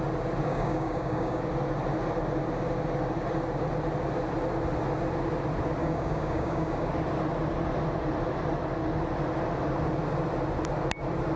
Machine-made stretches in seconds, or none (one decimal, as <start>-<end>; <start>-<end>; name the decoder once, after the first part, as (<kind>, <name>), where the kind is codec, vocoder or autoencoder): 0.5-1.4 (codec, DAC); 5.8-6.9